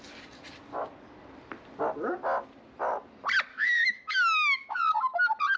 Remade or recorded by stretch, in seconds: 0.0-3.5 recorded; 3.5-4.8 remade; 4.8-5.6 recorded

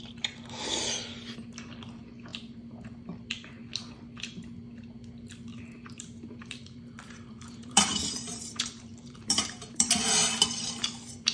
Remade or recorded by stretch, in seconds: 0.0-5.5 recorded; 5.5-9.9 remade; 9.9-11.3 recorded

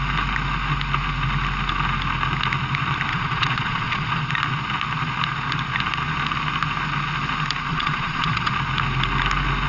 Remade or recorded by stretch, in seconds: 0.0-3.1 recorded; 3.1-4.2 remade; 4.2-7.7 recorded; 7.7-8.5 remade; 8.5-9.7 recorded